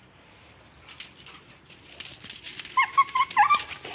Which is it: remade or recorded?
recorded